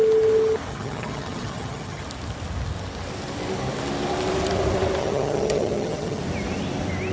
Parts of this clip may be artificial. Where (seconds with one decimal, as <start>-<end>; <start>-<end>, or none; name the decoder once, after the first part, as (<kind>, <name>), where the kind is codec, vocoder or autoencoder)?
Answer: 0.7-2.0 (vocoder, HiFi-GAN); 5.0-6.2